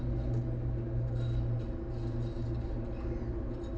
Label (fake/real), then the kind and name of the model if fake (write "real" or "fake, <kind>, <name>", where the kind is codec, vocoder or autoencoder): real